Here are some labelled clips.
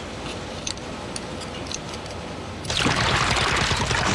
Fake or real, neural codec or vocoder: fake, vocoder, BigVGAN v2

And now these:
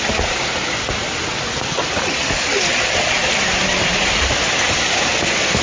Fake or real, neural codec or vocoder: real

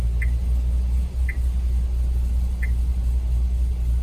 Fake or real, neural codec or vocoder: real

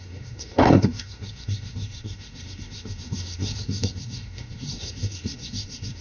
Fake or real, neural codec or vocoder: fake, codec, SNAC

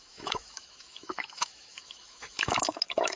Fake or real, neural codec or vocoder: fake, autoencoder, DAC-VAE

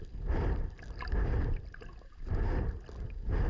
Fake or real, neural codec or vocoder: real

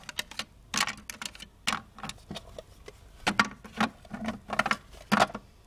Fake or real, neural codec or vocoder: real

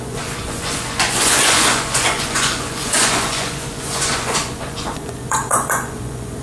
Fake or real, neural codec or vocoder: fake, vocoder, Vocos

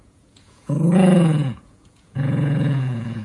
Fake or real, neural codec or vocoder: fake, vocoder, Vocos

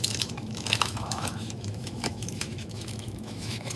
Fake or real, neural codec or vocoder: fake, autoencoder, DAC-VAE